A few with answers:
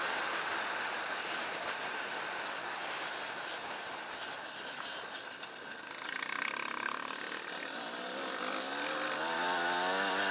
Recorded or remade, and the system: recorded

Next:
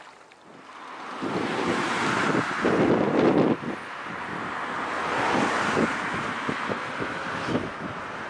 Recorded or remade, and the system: recorded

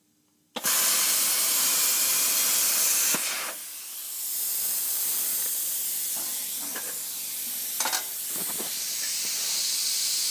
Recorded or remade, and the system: recorded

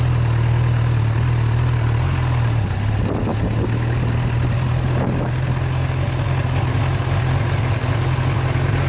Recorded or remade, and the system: recorded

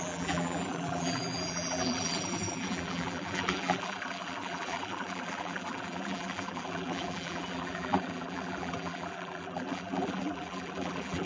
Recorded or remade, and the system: remade, vocoder, BigVGAN v2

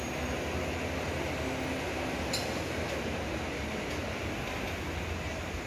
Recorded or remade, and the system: recorded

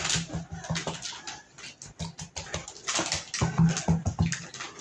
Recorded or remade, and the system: recorded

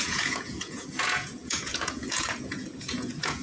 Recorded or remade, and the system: remade, vocoder, Vocos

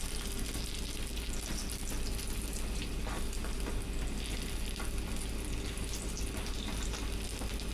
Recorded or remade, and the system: recorded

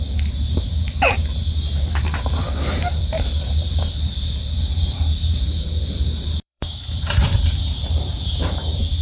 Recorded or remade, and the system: remade, vocoder, BigVGAN v2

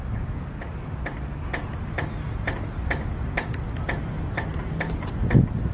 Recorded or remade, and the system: recorded